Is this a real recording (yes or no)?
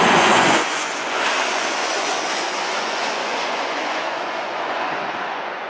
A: no